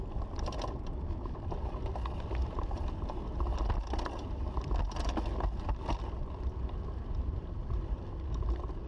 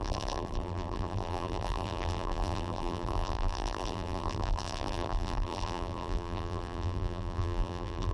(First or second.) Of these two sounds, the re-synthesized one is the second